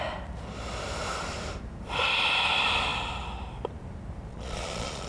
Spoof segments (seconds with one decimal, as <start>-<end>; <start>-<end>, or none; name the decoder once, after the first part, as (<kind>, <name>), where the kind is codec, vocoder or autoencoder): 4.3-5.1 (vocoder, Vocos)